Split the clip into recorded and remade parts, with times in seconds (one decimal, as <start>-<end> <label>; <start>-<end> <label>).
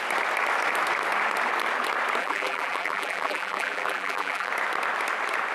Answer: 0.0-2.2 recorded; 2.2-4.5 remade; 4.5-5.5 recorded